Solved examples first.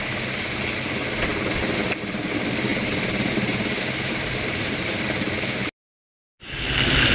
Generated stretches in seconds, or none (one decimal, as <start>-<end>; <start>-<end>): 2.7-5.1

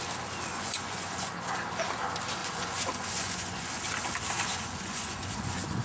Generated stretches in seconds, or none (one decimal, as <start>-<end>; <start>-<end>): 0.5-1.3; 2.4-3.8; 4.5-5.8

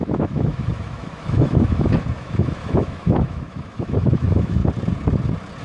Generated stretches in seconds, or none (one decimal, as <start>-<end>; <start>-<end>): 0.0-4.6